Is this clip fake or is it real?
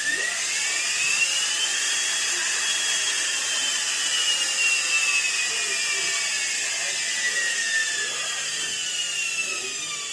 real